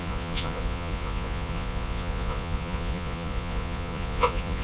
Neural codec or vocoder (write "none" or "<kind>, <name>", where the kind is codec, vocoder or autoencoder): vocoder, Vocos